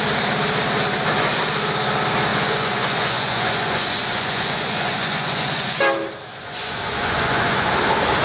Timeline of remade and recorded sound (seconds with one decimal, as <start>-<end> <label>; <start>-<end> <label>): 0.0-2.3 recorded; 2.3-5.8 remade; 5.8-6.3 recorded; 6.3-7.7 remade; 7.7-8.2 recorded